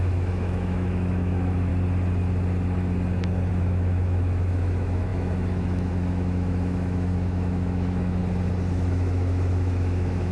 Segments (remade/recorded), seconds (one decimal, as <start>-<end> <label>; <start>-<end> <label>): 0.0-1.7 remade; 1.7-3.5 recorded; 3.5-8.2 remade; 8.2-8.7 recorded; 8.7-10.3 remade